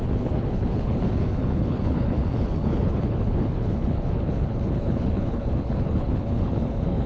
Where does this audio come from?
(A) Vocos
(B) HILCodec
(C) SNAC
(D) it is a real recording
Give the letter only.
B